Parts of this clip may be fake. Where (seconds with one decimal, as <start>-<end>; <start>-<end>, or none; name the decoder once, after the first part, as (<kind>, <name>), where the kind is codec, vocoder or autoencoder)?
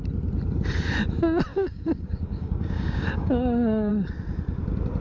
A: 1.5-3.9 (codec, DAC)